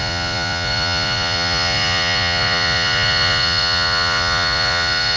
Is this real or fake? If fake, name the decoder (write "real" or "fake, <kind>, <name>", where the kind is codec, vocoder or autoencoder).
fake, vocoder, Vocos